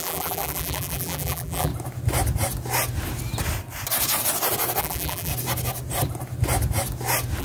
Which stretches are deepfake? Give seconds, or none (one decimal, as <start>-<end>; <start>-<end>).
0.0-1.7; 4.8-5.3